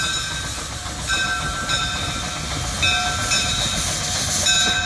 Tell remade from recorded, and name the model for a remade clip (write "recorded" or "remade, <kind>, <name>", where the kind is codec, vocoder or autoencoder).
recorded